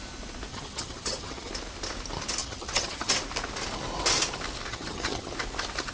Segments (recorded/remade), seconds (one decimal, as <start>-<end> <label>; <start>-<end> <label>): 0.0-0.5 recorded; 0.5-1.5 remade; 1.5-2.4 recorded; 2.4-3.1 remade; 3.1-4.7 recorded; 4.7-5.3 remade; 5.3-5.9 recorded